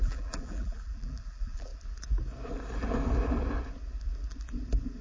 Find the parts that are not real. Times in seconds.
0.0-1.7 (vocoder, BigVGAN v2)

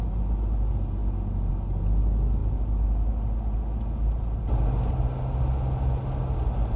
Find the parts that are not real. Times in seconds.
none

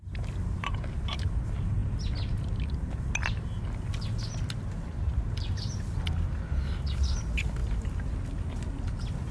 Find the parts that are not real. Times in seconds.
none

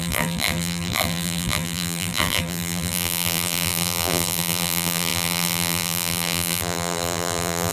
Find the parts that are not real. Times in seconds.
0.0-7.7 (vocoder, BigVGAN v2)